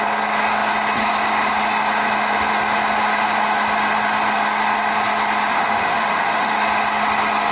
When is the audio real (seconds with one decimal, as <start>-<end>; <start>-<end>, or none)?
0.0-5.5; 6.5-7.5

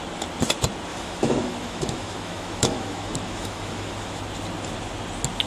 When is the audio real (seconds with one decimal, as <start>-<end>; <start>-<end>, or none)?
0.0-0.9; 4.2-5.5

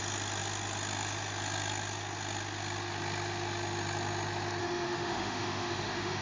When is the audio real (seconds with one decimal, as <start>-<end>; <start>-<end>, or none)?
0.0-4.6

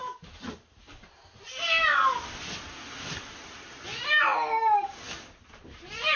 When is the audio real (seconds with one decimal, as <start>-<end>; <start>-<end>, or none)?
0.0-6.2